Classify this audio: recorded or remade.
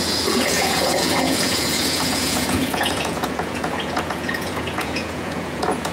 remade